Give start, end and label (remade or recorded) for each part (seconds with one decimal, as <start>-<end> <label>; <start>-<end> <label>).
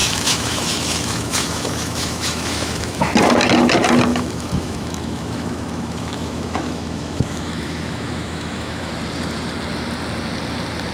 0.0-3.1 remade; 3.1-4.1 recorded; 4.1-8.9 remade; 8.9-10.9 recorded